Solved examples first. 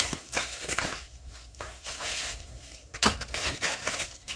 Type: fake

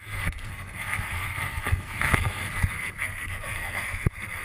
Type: fake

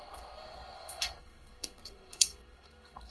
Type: fake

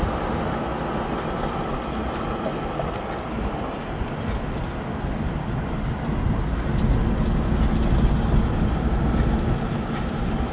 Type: real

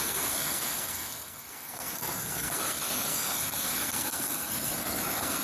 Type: fake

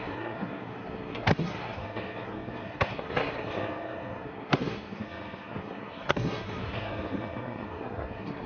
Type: fake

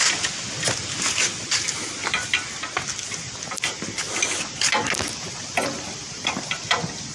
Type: real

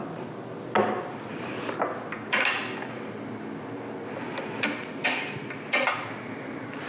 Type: real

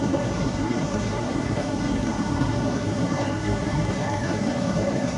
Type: fake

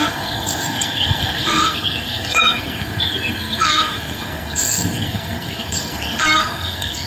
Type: fake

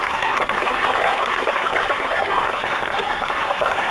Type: fake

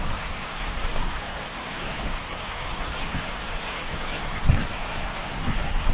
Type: fake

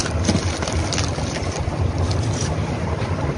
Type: real